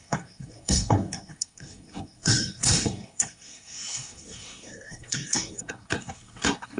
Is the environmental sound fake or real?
fake